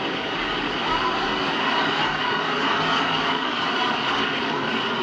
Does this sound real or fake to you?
fake